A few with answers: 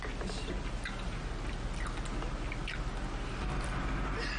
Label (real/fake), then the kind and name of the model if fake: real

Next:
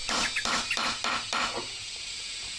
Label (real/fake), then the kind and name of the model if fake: real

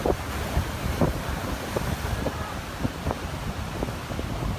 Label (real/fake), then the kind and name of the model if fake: fake, vocoder, BigVGAN v2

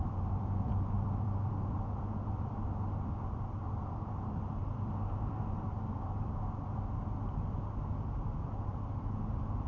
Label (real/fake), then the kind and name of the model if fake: fake, vocoder, BigVGAN v2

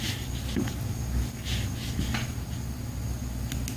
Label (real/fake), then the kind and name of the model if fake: real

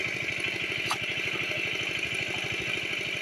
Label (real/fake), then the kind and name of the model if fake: real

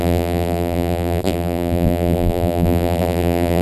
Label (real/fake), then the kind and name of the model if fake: fake, vocoder, BigVGAN v2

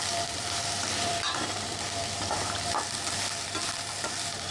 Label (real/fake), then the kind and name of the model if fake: fake, vocoder, BigVGAN v2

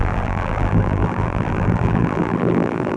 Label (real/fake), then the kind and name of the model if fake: fake, vocoder, BigVGAN v2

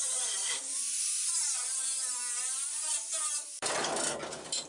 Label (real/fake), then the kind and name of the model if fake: fake, vocoder, BigVGAN v2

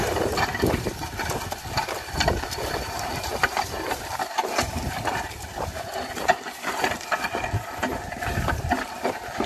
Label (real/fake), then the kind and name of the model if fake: fake, vocoder, BigVGAN v2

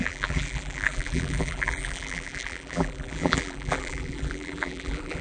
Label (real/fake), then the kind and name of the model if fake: fake, vocoder, BigVGAN v2